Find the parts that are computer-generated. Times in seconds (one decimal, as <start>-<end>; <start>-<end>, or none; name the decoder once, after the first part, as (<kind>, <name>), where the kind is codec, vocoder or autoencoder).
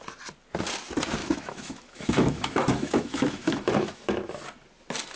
1.2-4.3 (autoencoder, DAC-VAE)